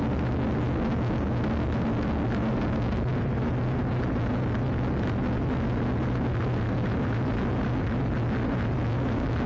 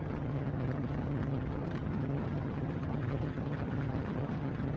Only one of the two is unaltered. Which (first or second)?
first